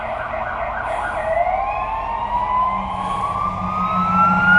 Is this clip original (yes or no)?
yes